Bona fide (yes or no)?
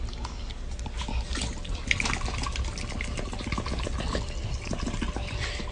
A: yes